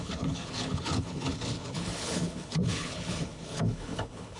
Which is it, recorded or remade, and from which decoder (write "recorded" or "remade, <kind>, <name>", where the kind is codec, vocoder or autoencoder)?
remade, codec, HILCodec